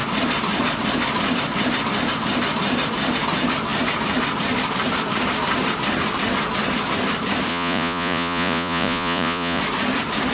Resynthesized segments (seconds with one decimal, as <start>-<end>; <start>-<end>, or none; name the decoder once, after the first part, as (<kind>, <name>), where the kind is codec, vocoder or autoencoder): 7.5-9.6 (vocoder, Vocos)